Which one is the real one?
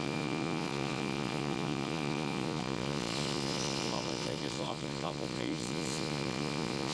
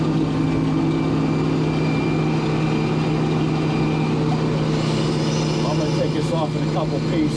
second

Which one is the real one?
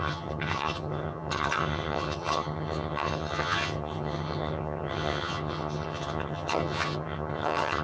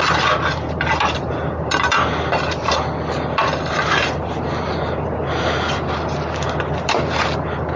second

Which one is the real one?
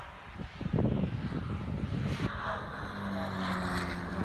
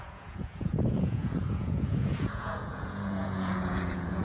first